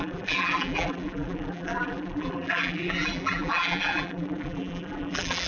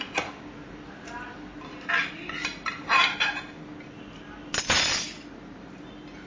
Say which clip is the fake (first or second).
first